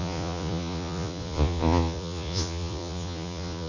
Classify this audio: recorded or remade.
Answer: remade